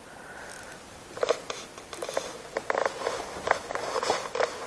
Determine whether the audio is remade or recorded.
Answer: recorded